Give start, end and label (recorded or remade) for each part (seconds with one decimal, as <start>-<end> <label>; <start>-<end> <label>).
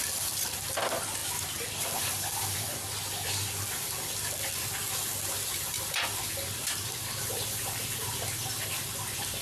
0.0-9.4 recorded